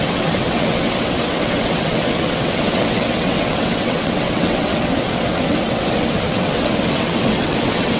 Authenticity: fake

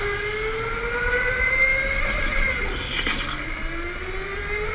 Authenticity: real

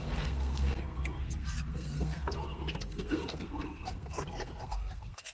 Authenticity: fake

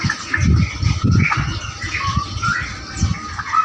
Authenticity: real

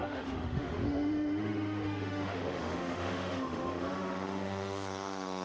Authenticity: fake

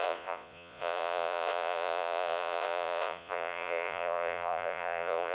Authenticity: fake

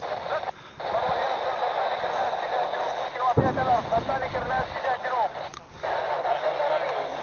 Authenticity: real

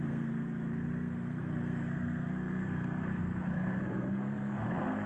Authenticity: fake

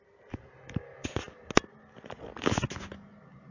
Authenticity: real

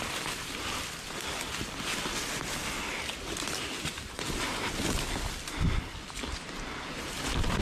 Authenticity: real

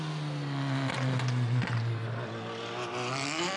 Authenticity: real